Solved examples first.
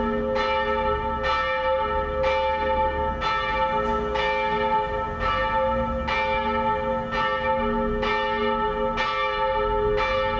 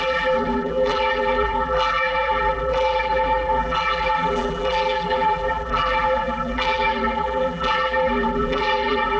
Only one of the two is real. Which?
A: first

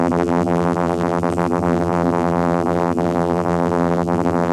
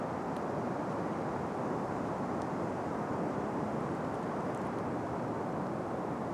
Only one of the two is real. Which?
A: second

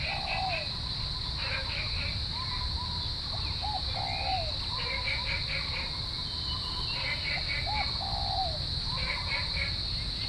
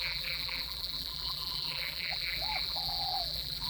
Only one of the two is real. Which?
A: first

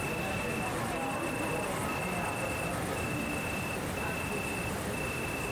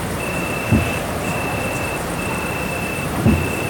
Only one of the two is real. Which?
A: first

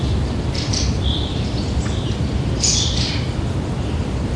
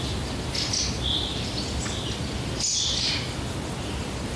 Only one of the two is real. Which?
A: second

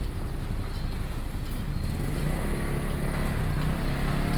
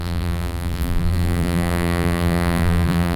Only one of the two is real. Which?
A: first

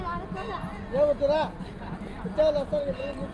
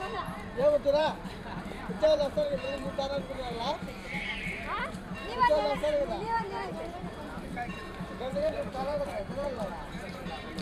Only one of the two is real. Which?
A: first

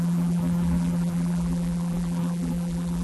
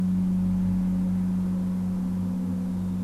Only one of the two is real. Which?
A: second